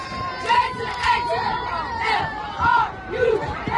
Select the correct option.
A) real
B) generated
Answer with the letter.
B